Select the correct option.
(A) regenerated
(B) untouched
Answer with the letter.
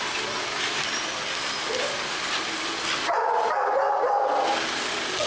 B